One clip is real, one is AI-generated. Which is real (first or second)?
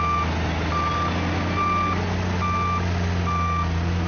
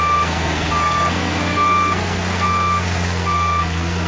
first